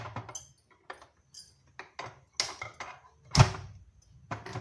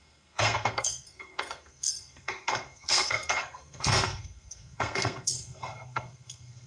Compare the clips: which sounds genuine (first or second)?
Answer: first